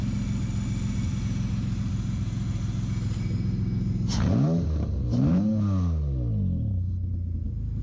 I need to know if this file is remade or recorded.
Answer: recorded